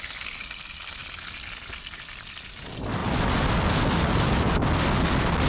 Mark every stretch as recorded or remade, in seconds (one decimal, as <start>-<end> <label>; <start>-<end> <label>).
0.0-5.5 recorded